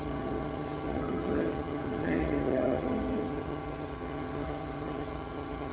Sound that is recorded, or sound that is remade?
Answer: remade